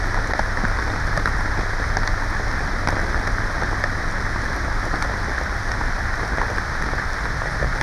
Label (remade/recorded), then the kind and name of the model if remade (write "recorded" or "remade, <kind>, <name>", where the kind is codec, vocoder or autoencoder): recorded